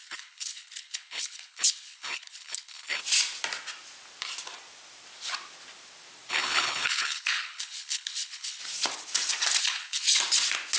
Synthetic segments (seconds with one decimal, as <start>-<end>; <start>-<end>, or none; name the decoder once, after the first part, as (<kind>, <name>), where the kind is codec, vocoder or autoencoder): 0.0-3.0 (codec, HILCodec); 6.3-8.6; 9.6-10.2